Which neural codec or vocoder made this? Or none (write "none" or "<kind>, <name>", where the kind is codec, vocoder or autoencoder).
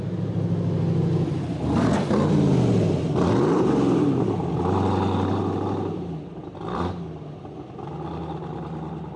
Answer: none